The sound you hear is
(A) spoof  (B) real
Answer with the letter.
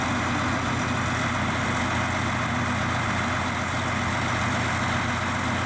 B